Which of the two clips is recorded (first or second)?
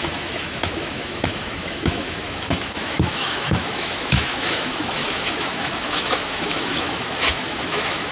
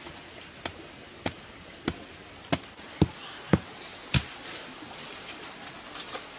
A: second